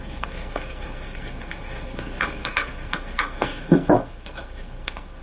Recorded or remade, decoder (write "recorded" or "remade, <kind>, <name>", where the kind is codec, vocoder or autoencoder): remade, codec, SNAC